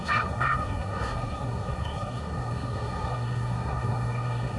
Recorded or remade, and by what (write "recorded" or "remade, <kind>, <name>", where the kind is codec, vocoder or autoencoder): remade, codec, SNAC